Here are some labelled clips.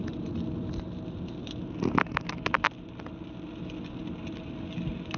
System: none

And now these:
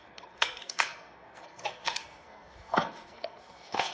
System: codec, SNAC